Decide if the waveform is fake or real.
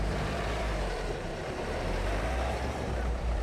fake